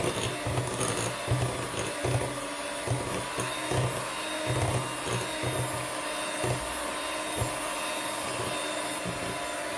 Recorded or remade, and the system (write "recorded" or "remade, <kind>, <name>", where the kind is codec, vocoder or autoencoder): recorded